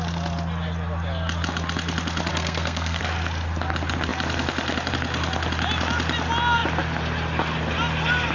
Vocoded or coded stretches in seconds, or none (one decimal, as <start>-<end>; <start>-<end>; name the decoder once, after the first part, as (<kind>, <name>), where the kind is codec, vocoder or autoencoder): 2.3-3.0 (codec, SNAC)